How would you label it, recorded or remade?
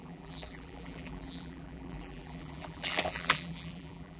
remade